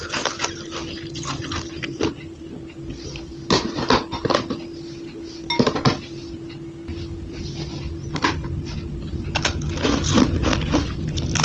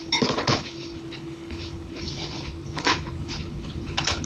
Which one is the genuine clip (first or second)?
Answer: first